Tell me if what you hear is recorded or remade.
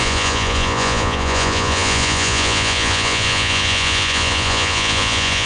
remade